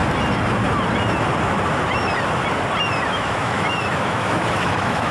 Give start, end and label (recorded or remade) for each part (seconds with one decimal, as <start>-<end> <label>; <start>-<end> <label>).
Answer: 0.0-3.1 recorded; 3.1-5.1 remade